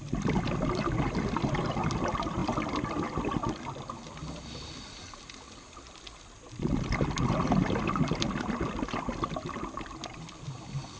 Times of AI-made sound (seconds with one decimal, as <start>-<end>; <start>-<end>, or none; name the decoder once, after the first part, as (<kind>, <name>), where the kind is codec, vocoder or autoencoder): none